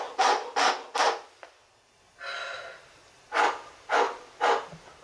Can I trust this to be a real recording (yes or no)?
yes